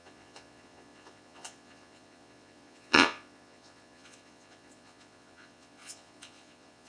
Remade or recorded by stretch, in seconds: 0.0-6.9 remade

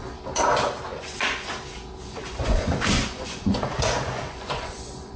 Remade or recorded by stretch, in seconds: 0.0-0.9 recorded; 0.9-1.5 remade; 1.5-2.0 recorded; 2.0-5.2 remade

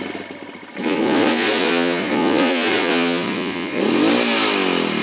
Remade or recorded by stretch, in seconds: 0.0-0.8 recorded; 0.8-3.8 remade; 3.8-5.0 recorded

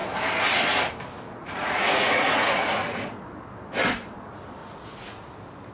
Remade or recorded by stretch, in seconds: 0.0-1.4 recorded; 1.4-3.3 remade; 3.3-4.6 recorded; 4.6-5.3 remade; 5.3-5.7 recorded

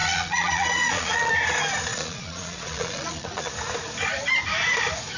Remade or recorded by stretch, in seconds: 0.0-1.3 remade; 1.3-1.9 recorded; 1.9-3.5 remade; 3.5-5.2 recorded

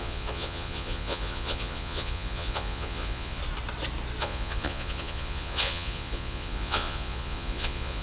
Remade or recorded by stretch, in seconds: 0.0-3.4 remade; 3.4-4.2 recorded; 4.2-8.0 remade